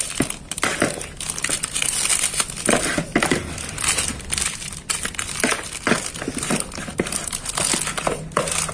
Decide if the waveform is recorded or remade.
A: recorded